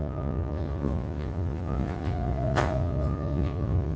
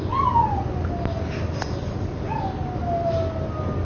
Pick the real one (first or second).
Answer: second